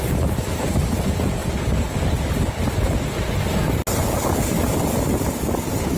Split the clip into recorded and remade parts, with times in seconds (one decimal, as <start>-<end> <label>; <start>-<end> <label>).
0.0-6.0 recorded